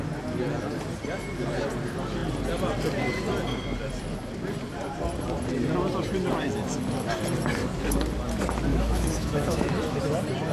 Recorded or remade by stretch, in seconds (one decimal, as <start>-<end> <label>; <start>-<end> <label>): 0.0-8.7 recorded; 8.7-10.0 remade; 10.0-10.5 recorded